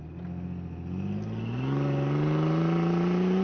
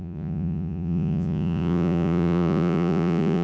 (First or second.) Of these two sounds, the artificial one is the second